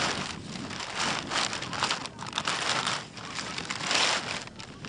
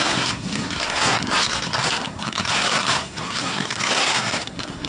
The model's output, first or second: second